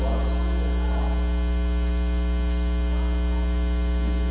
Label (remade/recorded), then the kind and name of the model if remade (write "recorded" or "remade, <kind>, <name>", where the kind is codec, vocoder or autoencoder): recorded